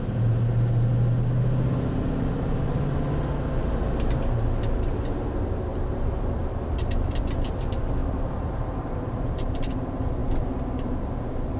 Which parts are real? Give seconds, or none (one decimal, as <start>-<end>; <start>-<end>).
0.0-5.7; 6.4-8.0; 9.7-11.6